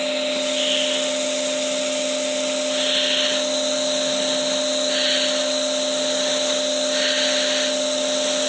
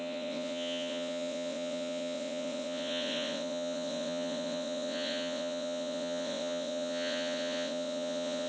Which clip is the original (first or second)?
first